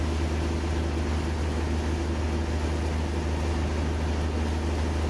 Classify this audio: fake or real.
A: real